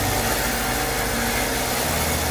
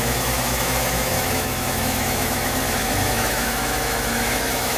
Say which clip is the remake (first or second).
second